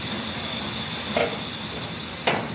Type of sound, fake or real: real